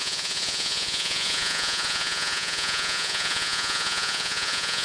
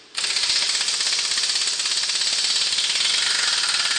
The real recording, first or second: second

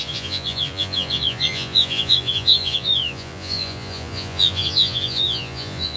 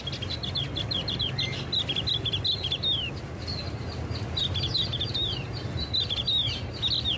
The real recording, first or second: second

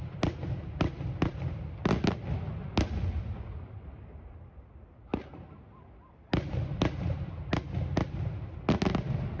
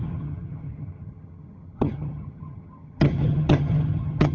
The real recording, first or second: first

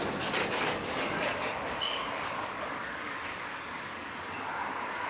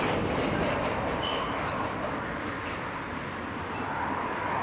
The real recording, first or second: second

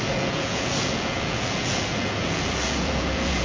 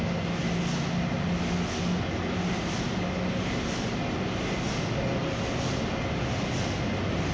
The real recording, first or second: second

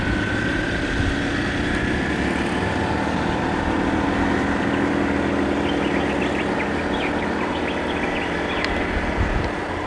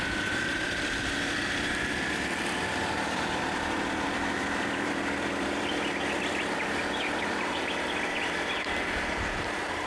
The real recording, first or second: first